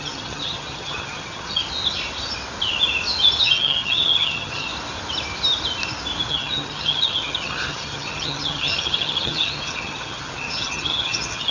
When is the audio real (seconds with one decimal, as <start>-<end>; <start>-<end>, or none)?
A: 1.6-3.4; 4.7-6.3